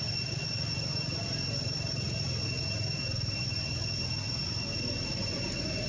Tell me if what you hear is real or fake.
real